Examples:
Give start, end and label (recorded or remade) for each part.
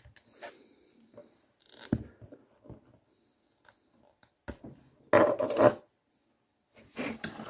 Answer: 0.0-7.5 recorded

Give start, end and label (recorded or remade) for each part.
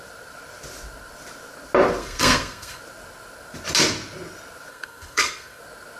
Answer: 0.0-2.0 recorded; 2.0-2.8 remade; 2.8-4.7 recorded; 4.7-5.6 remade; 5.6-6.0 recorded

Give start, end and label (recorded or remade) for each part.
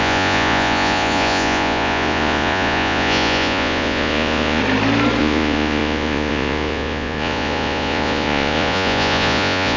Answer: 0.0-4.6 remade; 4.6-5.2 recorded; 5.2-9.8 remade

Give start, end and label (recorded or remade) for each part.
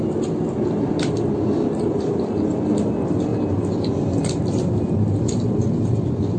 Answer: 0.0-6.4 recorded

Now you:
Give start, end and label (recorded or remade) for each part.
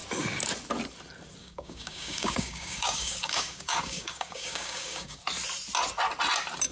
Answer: 0.0-1.4 recorded; 1.4-5.2 remade; 5.2-6.7 recorded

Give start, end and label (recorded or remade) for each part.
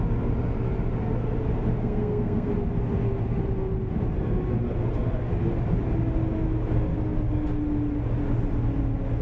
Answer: 0.0-1.8 recorded; 1.8-2.5 remade; 2.5-9.2 recorded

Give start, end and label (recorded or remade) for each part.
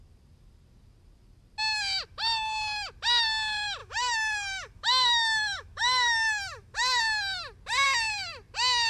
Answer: 0.0-3.8 recorded; 3.8-7.0 remade; 7.0-8.9 recorded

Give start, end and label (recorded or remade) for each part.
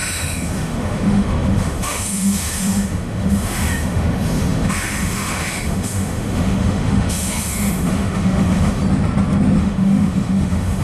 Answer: 0.0-8.8 remade; 8.8-9.6 recorded; 9.6-10.8 remade